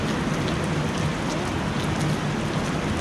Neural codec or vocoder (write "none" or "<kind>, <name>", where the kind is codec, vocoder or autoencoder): none